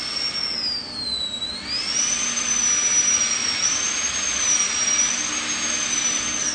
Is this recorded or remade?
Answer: recorded